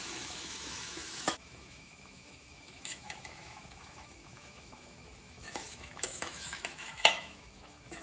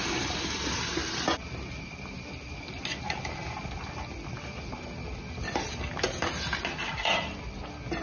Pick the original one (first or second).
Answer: second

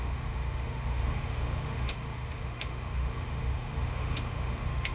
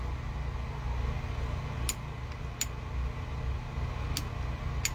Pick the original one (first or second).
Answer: second